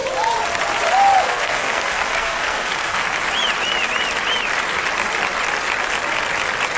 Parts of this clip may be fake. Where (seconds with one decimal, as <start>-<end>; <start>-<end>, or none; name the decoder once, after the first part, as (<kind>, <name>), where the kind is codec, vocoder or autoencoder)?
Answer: 1.2-3.0 (codec, SNAC)